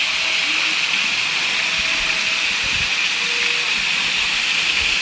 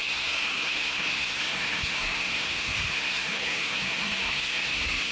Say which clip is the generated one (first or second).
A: second